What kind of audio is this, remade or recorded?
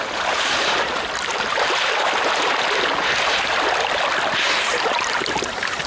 recorded